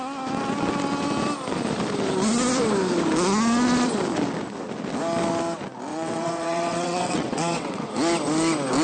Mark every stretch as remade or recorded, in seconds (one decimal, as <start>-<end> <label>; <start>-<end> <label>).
0.0-5.9 recorded; 5.9-7.9 remade; 7.9-8.8 recorded